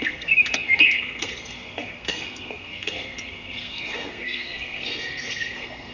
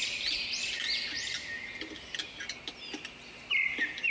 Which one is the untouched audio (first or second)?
second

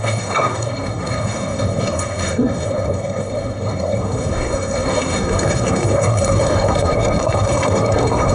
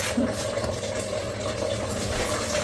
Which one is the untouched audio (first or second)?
second